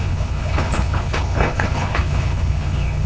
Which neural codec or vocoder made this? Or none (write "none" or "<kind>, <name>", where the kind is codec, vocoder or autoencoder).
codec, HILCodec